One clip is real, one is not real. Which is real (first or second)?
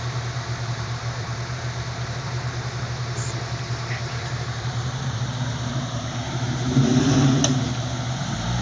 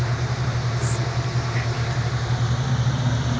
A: second